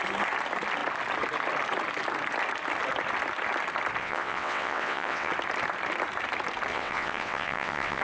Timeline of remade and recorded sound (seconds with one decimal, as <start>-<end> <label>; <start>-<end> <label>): 0.0-4.0 recorded; 4.0-5.3 remade; 5.3-6.7 recorded; 6.7-8.0 remade